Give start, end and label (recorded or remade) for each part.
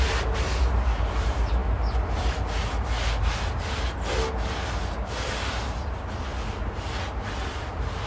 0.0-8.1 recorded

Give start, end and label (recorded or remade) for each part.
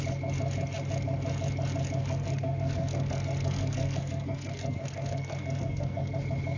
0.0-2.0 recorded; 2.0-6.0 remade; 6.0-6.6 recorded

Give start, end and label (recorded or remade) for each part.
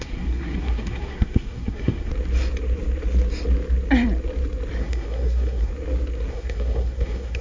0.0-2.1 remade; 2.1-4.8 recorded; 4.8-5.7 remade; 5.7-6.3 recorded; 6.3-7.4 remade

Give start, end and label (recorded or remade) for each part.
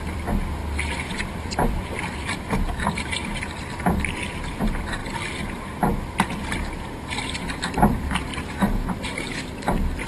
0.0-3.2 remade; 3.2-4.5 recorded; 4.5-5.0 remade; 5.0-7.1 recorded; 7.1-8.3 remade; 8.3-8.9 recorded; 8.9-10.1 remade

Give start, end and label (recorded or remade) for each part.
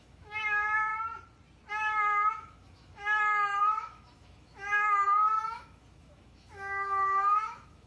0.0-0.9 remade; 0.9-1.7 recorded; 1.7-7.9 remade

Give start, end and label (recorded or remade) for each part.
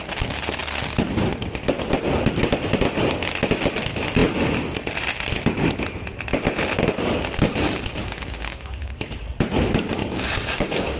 0.0-8.0 recorded; 8.0-9.2 remade; 9.2-10.0 recorded; 10.0-11.0 remade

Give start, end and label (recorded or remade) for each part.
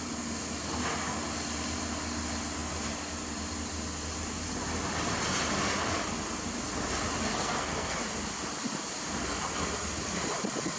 0.0-7.3 recorded; 7.3-8.0 remade; 8.0-10.8 recorded